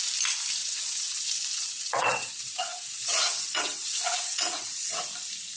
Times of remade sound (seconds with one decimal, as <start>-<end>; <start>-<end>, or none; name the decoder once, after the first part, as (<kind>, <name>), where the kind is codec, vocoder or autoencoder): 0.6-1.2 (vocoder, WaveNeXt); 1.6-5.0